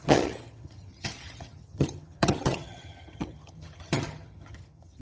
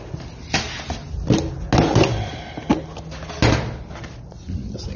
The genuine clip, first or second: second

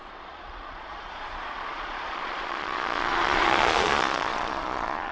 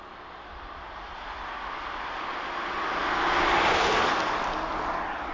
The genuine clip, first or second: second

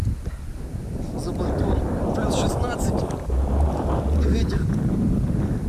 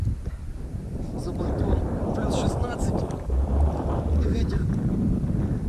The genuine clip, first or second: first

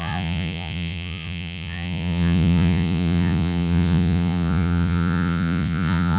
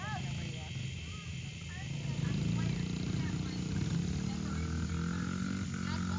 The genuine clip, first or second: second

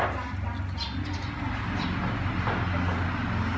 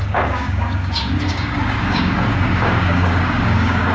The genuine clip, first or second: first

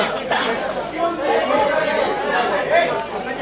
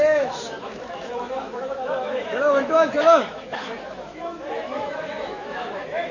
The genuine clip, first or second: first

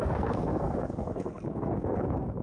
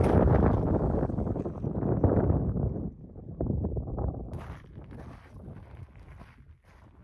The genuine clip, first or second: second